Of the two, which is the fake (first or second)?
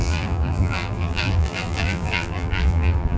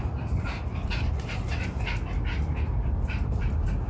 first